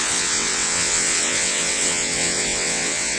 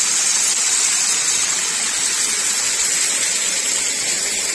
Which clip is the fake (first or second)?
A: first